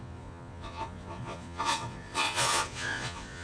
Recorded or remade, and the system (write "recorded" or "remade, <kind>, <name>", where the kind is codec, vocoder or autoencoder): remade, vocoder, Vocos